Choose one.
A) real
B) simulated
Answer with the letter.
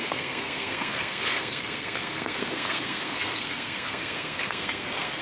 B